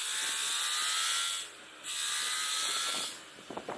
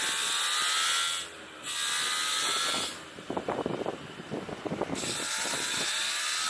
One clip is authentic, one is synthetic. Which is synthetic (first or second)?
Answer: first